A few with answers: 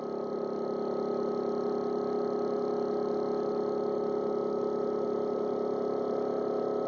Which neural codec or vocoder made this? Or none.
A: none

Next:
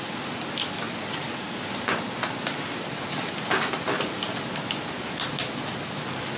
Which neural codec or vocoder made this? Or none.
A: none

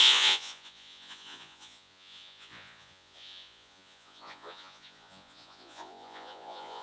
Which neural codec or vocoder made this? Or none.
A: vocoder, Vocos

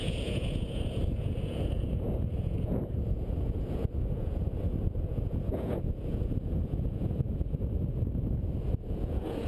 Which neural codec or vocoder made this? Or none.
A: vocoder, Vocos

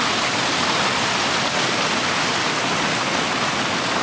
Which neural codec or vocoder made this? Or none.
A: none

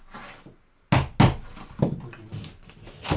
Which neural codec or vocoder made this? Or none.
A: none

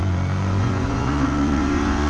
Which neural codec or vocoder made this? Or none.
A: vocoder, Vocos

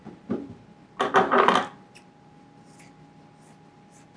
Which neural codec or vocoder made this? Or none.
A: none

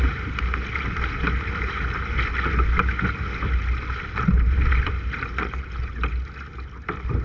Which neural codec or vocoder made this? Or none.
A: none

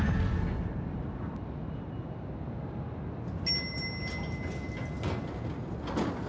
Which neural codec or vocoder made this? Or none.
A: none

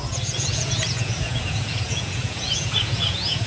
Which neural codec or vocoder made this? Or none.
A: vocoder, Vocos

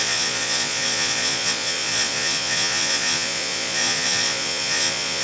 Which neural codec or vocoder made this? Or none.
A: vocoder, Vocos